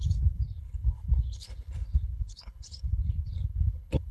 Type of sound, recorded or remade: remade